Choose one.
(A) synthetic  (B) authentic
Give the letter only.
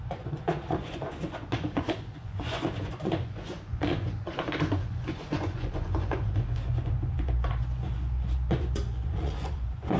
A